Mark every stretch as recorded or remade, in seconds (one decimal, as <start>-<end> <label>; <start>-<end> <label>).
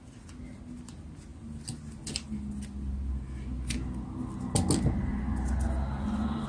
0.0-6.5 recorded